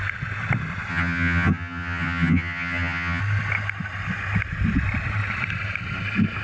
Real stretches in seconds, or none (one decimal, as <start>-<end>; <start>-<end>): 0.0-0.9; 3.2-6.4